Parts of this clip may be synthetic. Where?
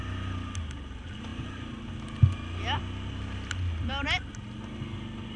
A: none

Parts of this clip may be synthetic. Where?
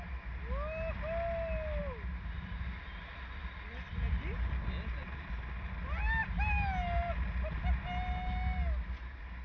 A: none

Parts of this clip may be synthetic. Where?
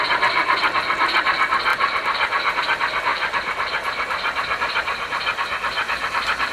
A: 1.7-2.6 (vocoder, BigVGAN v2); 3.1-6.5